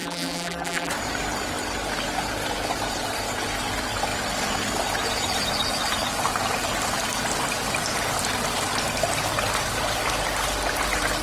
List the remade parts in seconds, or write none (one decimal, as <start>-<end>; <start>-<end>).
0.0-0.9